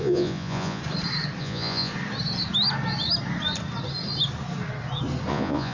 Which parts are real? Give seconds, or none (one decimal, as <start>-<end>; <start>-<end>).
0.8-1.4; 1.9-5.3